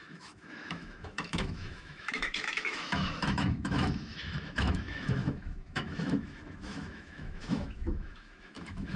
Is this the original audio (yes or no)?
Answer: no